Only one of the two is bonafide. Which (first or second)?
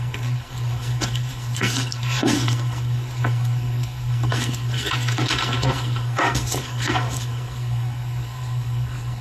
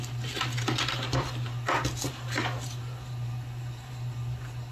second